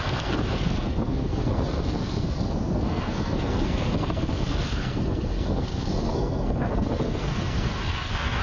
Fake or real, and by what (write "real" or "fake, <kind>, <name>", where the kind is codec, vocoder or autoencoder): fake, codec, SNAC